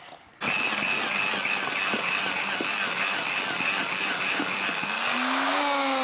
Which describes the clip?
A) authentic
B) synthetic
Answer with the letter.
A